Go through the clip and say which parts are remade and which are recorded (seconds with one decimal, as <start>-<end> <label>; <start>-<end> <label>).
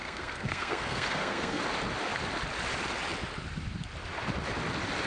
0.0-1.6 remade; 1.6-5.1 recorded